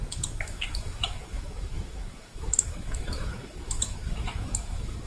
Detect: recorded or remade remade